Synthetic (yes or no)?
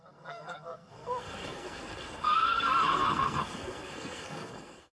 yes